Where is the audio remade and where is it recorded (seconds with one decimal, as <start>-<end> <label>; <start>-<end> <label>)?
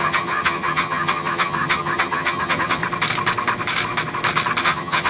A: 0.0-2.8 remade; 2.8-4.6 recorded; 4.6-5.1 remade